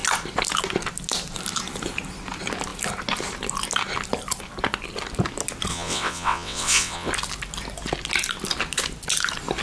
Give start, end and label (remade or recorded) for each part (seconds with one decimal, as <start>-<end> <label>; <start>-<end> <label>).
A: 0.0-5.7 recorded; 5.7-7.1 remade; 7.1-9.6 recorded